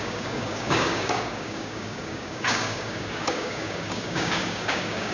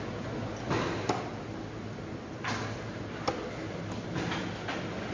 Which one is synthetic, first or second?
first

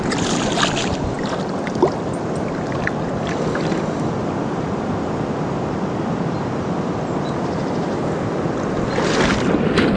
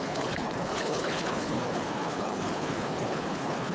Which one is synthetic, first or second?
second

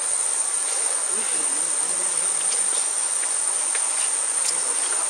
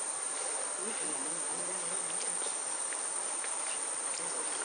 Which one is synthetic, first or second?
first